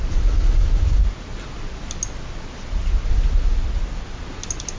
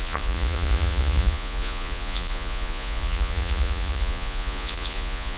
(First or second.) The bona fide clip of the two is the first